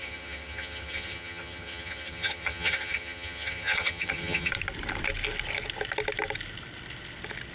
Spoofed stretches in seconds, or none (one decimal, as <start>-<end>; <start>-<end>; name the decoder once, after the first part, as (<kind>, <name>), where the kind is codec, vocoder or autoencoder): 0.0-4.5 (vocoder, HiFi-GAN)